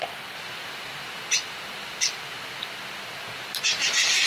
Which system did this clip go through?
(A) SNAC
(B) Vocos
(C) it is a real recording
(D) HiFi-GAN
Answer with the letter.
C